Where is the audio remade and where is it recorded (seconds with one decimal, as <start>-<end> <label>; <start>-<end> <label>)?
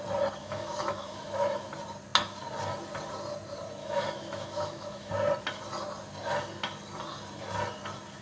0.0-0.4 recorded; 0.4-1.7 remade; 1.7-3.8 recorded; 3.8-5.1 remade; 5.1-8.2 recorded